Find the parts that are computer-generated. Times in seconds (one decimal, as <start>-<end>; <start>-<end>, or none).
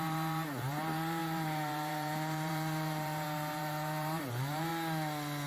0.0-4.7